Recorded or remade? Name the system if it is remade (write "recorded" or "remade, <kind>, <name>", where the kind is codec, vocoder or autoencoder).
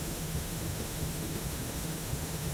remade, autoencoder, DAC-VAE